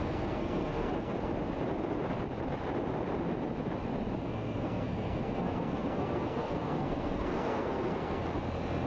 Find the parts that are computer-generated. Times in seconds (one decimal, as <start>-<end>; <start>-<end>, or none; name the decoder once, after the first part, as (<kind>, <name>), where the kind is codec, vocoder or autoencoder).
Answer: 0.0-1.3 (codec, SNAC); 4.2-8.2